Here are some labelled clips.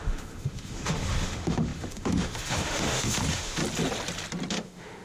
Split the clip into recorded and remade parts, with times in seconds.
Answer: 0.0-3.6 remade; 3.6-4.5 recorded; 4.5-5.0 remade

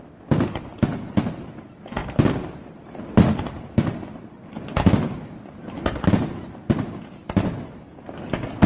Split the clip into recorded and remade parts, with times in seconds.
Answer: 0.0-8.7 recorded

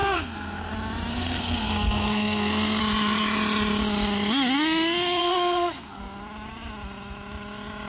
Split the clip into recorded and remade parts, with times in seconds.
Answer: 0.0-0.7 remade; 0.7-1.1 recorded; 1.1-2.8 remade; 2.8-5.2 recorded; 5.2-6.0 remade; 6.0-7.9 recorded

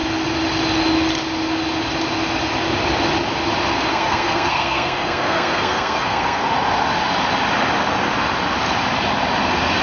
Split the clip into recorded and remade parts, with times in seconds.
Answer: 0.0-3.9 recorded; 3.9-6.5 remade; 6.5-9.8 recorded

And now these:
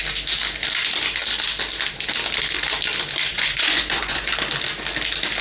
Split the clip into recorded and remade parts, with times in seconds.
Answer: 0.0-3.3 recorded; 3.3-4.3 remade; 4.3-5.4 recorded